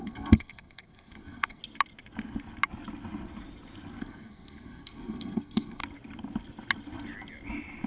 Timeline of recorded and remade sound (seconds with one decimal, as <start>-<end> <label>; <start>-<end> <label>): 0.0-1.6 remade; 1.6-4.0 recorded; 4.0-5.8 remade; 5.8-7.9 recorded